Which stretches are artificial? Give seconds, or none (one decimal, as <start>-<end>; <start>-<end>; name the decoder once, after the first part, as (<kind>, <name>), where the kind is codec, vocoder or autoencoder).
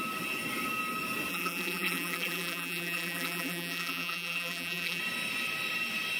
1.3-5.0 (vocoder, BigVGAN v2)